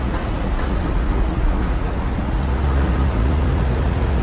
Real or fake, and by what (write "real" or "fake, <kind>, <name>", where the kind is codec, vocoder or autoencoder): fake, vocoder, Vocos